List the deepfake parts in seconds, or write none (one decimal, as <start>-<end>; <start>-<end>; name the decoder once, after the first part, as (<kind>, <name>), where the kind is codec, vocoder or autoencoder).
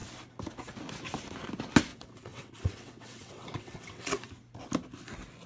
1.9-4.3 (vocoder, WaveNeXt)